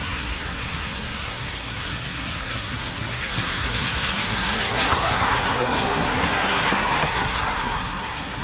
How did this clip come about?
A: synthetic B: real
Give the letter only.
A